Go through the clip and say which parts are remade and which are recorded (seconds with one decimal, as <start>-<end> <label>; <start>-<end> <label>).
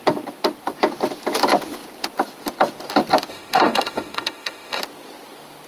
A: 0.0-3.3 recorded; 3.3-4.8 remade; 4.8-5.7 recorded